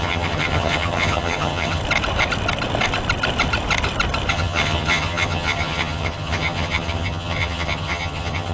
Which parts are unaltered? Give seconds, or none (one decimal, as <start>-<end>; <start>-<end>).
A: 1.8-4.3